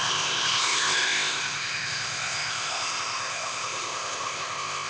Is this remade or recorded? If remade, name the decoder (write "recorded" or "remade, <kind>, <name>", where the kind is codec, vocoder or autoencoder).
remade, codec, ZipCodec